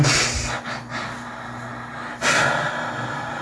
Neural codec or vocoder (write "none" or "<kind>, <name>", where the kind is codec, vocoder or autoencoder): none